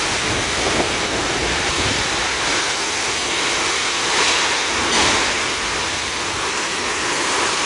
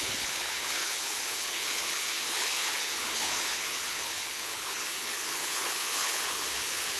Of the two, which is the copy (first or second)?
second